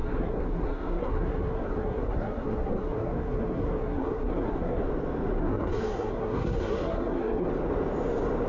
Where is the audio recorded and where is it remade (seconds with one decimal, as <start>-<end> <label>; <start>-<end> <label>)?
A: 0.0-4.8 remade; 4.8-5.4 recorded; 5.4-7.5 remade; 7.5-8.5 recorded